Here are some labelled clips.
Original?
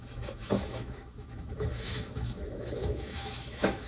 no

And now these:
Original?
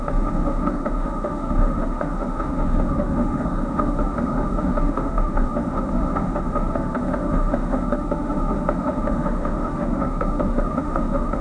no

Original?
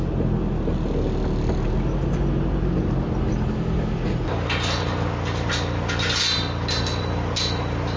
yes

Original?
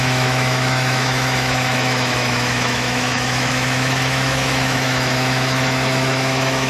no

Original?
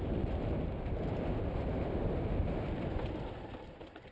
yes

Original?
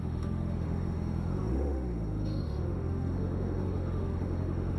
no